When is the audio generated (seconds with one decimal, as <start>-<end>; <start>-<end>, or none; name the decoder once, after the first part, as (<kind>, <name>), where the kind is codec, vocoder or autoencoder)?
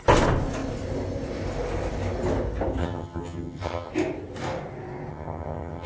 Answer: 2.8-3.9 (vocoder, HiFi-GAN); 5.1-5.9